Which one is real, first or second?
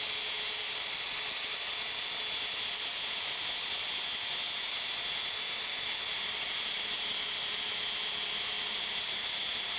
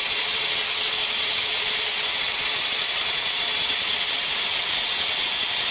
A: first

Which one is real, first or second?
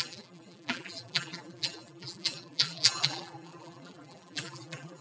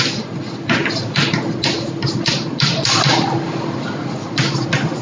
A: second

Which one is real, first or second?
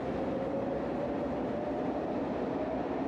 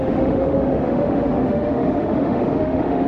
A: first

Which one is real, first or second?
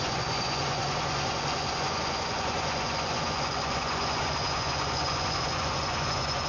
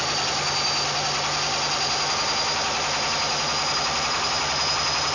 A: second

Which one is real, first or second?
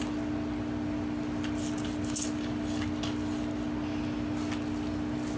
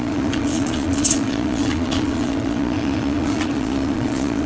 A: first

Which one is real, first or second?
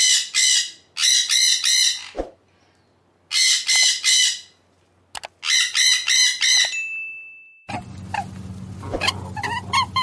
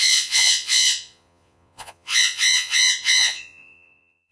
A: first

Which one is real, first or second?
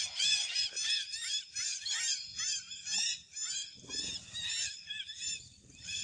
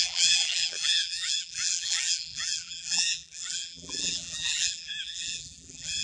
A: first